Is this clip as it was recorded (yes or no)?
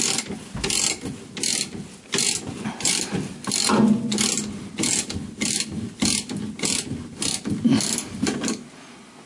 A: yes